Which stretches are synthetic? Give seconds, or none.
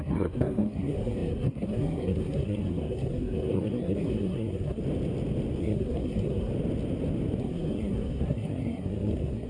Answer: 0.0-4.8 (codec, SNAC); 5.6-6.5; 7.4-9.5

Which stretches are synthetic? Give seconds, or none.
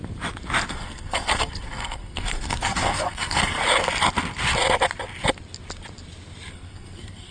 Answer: 0.7-3.6 (codec, SNAC); 6.5-7.3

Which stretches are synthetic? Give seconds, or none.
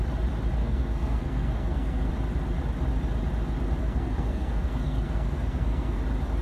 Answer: 0.6-2.1 (codec, SNAC); 3.8-6.0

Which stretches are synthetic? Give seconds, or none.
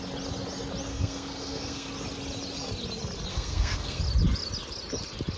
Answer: 0.9-1.9 (codec, SNAC); 3.3-4.0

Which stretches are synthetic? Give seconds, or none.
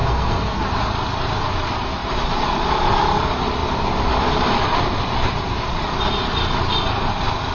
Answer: 0.0-0.6 (codec, SNAC)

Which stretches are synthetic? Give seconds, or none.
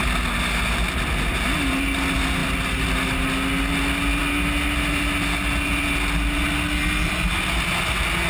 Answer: none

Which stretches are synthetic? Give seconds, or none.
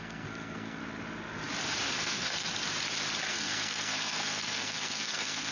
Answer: 0.0-0.8 (codec, SNAC); 1.8-2.5; 3.3-5.5